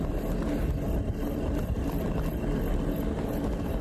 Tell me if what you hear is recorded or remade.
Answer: recorded